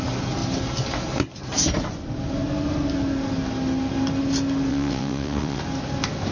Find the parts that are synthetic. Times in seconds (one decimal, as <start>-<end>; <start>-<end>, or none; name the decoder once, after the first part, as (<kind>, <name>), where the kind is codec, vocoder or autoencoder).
4.7-5.6 (vocoder, WaveNeXt)